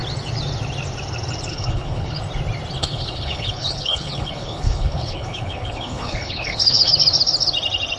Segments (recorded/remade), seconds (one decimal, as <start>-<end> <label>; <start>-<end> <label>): 0.0-1.5 recorded; 1.5-2.2 remade; 2.2-2.8 recorded; 2.8-6.9 remade; 6.9-8.0 recorded